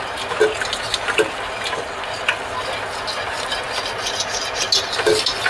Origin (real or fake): real